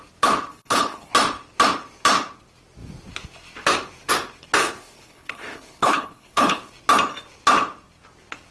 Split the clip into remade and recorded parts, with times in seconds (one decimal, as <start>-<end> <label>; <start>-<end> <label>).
0.0-0.5 recorded; 0.5-1.1 remade; 1.1-4.6 recorded; 4.6-6.7 remade; 6.7-8.5 recorded